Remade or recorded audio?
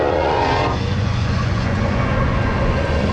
remade